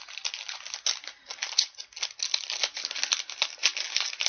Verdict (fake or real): real